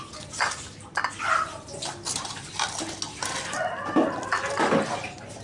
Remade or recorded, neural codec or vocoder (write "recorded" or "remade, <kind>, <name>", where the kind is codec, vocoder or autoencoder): recorded